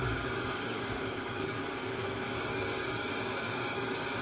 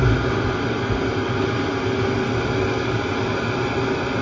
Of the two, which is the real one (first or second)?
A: second